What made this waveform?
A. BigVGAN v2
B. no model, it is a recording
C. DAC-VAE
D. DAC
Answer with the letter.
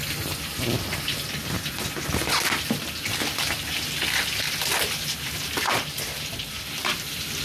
B